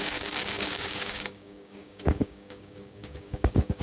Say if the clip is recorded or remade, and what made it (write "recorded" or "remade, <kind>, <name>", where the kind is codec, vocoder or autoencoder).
remade, codec, DAC